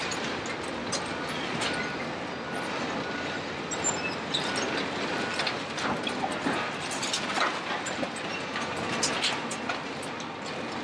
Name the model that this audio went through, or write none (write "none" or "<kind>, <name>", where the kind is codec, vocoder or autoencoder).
none